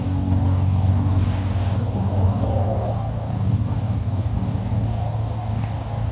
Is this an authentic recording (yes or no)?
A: no